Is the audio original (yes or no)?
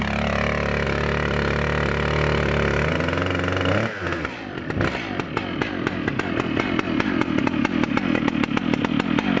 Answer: yes